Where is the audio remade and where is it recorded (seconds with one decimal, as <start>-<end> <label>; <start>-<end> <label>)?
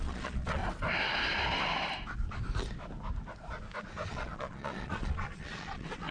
0.0-0.6 remade; 0.6-4.1 recorded; 4.1-6.1 remade